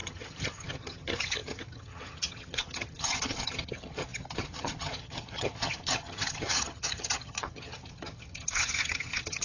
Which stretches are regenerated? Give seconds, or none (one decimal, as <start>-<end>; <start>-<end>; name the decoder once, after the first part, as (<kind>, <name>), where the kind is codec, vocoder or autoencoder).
0.0-9.4 (vocoder, HiFi-GAN)